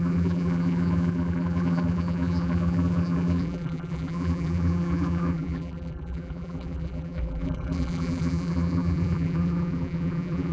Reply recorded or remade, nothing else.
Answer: remade